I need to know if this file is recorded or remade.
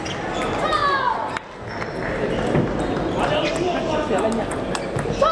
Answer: recorded